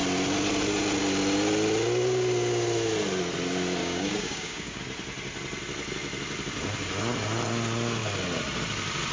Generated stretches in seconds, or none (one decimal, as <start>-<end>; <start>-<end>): 3.8-4.8